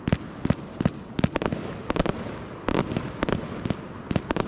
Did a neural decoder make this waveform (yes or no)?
no